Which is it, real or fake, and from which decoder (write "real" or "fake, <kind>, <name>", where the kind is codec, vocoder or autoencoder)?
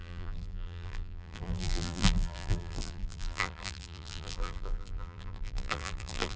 fake, vocoder, BigVGAN v2